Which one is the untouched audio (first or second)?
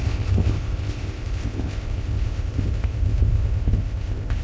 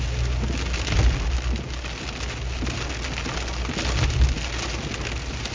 second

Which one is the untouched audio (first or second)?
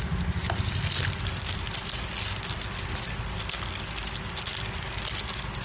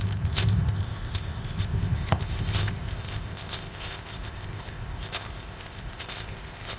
first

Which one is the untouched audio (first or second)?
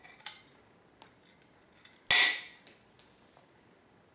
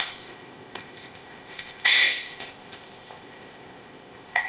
first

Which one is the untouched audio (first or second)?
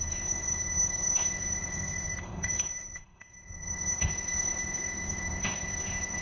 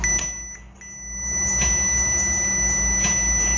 second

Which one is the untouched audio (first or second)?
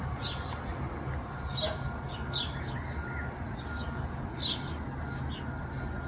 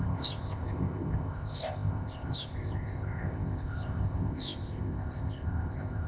first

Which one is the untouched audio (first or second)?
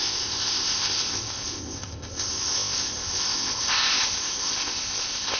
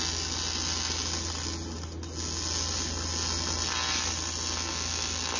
second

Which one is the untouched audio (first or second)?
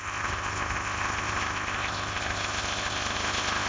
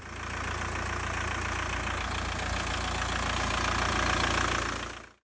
second